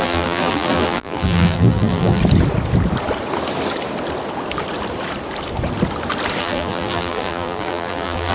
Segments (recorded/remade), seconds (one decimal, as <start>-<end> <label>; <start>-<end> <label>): 0.0-2.2 remade; 2.2-6.4 recorded; 6.4-8.3 remade